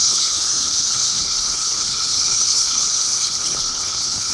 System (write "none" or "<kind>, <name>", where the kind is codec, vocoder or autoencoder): codec, HILCodec